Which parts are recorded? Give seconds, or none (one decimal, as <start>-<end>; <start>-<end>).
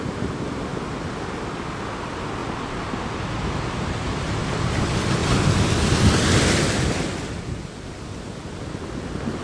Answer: 0.0-9.4